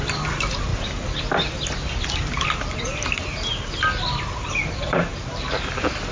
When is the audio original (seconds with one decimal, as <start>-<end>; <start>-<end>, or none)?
0.0-6.1